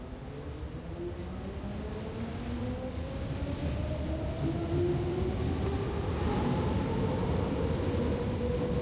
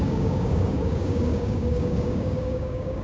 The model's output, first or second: second